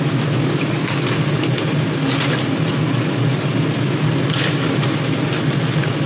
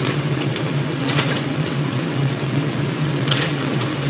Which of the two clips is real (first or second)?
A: first